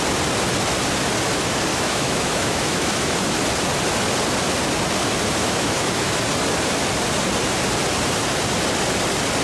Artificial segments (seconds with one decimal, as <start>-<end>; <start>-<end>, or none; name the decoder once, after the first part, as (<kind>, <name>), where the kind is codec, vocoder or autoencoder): 1.7-3.2 (autoencoder, DAC-VAE); 5.4-6.2